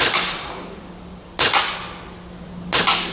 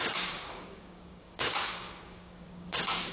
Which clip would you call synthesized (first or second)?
second